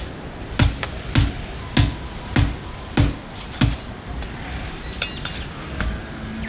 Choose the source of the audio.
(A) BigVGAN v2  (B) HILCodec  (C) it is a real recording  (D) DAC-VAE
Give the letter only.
C